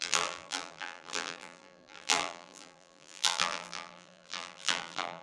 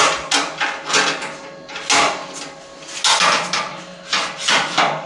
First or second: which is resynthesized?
first